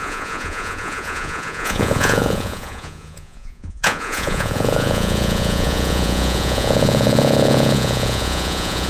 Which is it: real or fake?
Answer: fake